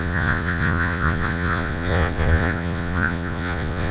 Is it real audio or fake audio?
fake